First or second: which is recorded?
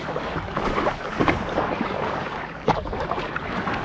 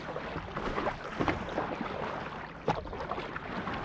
second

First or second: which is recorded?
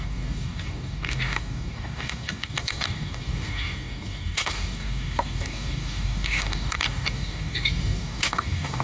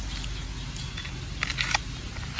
second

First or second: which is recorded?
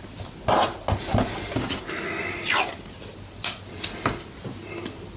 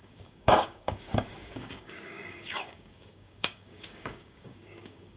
first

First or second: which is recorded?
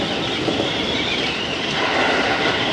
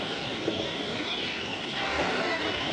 first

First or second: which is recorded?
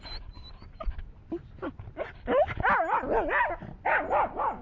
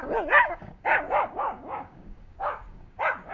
first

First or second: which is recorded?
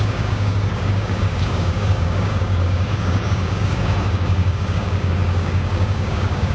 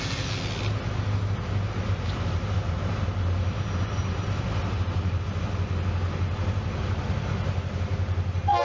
second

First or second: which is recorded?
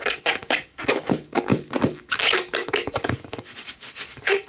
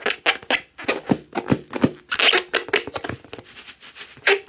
second